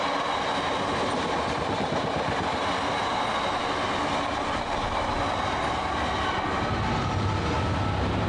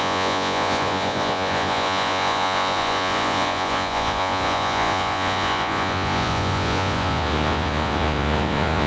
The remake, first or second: second